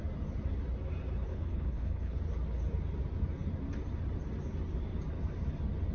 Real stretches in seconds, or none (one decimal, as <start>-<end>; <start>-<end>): 0.0-1.3; 2.2-5.9